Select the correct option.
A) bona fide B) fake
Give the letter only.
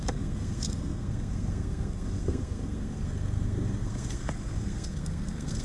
B